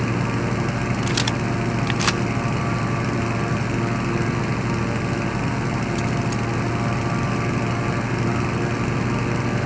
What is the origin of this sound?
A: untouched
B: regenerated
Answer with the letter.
A